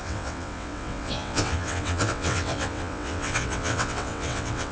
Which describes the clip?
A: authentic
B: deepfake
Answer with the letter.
B